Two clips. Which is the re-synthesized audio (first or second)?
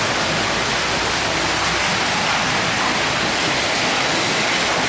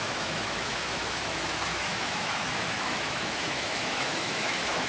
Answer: second